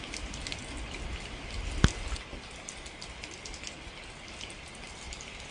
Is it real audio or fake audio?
real